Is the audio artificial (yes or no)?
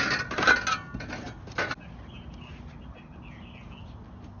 no